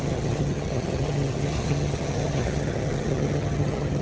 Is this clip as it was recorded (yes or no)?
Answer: no